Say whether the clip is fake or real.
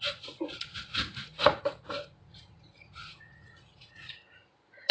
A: fake